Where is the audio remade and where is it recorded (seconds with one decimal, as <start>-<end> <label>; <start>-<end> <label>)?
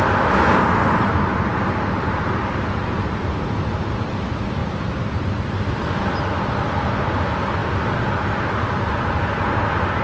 0.0-4.6 recorded; 4.6-5.2 remade; 5.2-10.0 recorded